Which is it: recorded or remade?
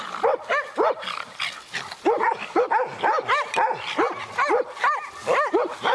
recorded